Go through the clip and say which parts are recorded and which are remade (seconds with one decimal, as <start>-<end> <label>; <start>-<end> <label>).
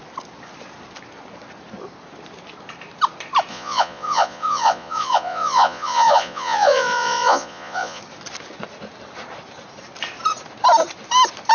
0.0-3.5 recorded; 3.5-8.0 remade; 8.0-11.5 recorded